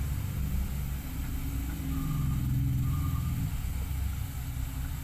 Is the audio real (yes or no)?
yes